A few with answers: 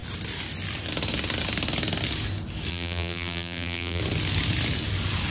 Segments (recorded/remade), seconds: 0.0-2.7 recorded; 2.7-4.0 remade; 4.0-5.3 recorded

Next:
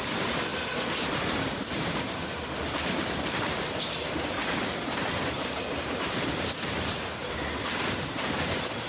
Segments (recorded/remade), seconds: 0.0-0.5 remade; 0.5-2.5 recorded; 2.5-8.9 remade

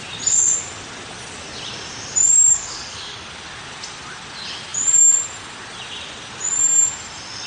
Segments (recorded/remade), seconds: 0.0-2.5 recorded; 2.5-3.3 remade; 3.3-7.5 recorded